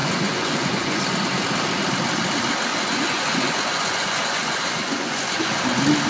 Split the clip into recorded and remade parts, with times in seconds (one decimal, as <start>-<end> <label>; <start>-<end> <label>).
0.0-1.0 remade; 1.0-2.7 recorded; 2.7-5.6 remade; 5.6-6.1 recorded